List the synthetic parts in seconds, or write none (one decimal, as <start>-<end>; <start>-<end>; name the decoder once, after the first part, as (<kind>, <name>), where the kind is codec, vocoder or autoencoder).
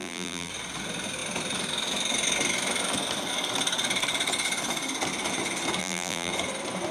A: 0.0-0.5 (vocoder, BigVGAN v2); 5.8-6.3